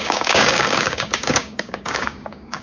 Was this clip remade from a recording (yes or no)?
yes